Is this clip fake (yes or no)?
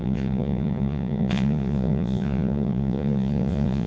yes